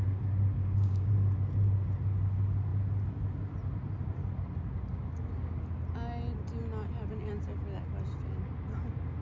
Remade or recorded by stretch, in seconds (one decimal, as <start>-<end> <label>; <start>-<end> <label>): 0.0-0.6 recorded; 0.6-1.1 remade; 1.1-9.2 recorded